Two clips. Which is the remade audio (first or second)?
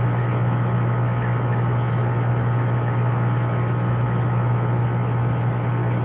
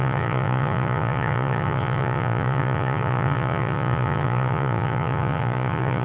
second